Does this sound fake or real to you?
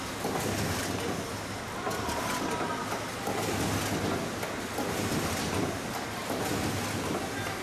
real